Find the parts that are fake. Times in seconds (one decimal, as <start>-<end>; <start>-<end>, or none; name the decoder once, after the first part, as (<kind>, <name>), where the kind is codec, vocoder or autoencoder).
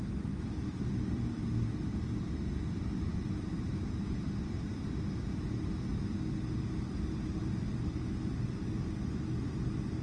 none